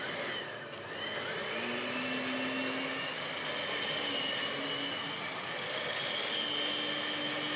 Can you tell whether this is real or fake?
real